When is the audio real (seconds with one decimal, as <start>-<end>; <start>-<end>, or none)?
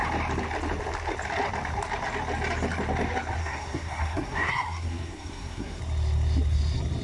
0.0-3.4; 5.8-7.0